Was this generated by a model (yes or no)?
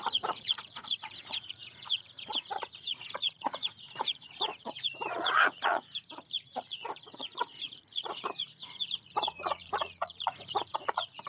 yes